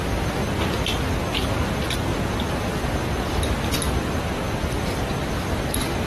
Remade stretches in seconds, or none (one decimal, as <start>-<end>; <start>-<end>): none